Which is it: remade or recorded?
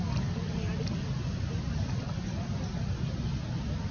recorded